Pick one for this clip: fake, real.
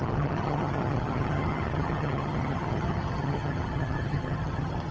fake